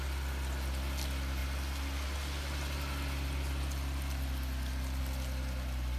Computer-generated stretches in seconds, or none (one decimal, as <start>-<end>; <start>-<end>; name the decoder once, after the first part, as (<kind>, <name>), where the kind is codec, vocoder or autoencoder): none

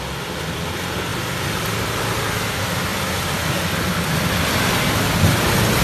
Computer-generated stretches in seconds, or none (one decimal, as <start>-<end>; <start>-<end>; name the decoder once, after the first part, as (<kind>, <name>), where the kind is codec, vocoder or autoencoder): 1.1-1.6 (vocoder, BigVGAN v2); 2.9-4.6

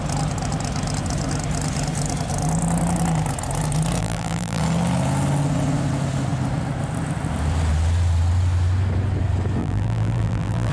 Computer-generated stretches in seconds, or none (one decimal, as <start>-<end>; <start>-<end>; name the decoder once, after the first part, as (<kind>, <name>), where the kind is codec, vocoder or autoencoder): 4.0-4.6 (vocoder, BigVGAN v2); 9.6-10.7

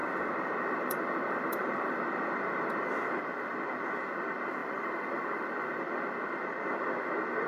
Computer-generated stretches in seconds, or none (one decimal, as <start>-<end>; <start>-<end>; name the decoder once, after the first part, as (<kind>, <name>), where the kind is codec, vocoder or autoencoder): 0.0-2.0 (vocoder, BigVGAN v2); 4.6-5.8

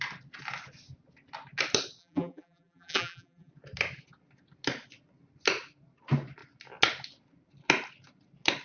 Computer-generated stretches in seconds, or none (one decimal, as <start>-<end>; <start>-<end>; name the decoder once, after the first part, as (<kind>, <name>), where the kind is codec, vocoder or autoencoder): 2.0-3.5 (vocoder, BigVGAN v2)

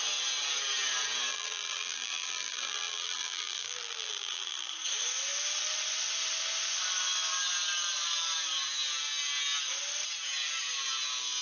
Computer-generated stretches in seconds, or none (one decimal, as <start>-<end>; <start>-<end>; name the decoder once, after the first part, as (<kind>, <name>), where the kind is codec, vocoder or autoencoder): 1.3-4.7 (vocoder, BigVGAN v2)

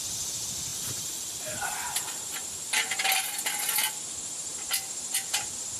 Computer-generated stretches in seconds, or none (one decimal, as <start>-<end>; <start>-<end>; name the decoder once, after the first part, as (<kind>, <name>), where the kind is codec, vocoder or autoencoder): 0.7-2.2 (vocoder, BigVGAN v2)